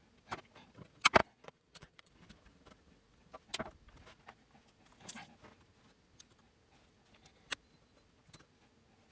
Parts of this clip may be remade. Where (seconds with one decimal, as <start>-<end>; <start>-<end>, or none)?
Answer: 1.2-2.1